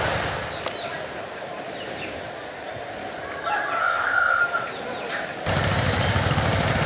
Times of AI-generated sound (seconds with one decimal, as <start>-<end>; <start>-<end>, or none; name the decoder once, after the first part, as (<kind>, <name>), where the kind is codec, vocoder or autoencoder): 3.8-4.4 (codec, ZipCodec)